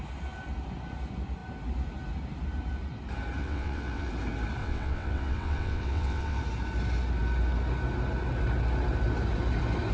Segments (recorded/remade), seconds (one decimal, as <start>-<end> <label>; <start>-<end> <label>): 0.0-3.4 recorded; 3.4-4.1 remade; 4.1-4.6 recorded; 4.6-6.4 remade; 6.4-9.9 recorded